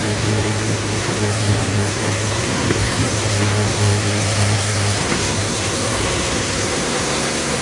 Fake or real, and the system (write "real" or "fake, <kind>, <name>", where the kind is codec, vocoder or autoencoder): fake, codec, SNAC